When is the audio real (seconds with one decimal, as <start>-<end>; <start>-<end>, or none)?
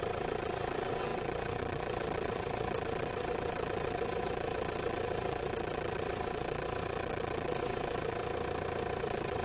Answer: 8.2-9.0